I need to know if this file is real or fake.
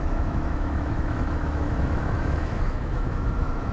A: fake